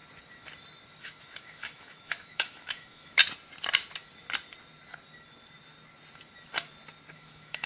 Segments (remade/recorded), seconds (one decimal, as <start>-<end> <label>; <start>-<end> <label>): 0.0-1.0 recorded; 1.0-3.2 remade; 3.2-7.1 recorded; 7.1-7.7 remade